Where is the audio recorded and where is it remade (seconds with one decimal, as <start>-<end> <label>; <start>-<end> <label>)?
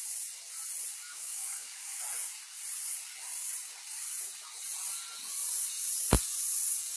0.0-1.0 recorded; 1.0-2.0 remade; 2.0-7.0 recorded